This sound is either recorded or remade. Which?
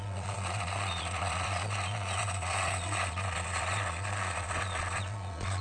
remade